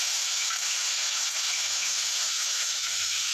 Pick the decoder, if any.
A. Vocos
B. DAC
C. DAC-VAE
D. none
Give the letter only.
C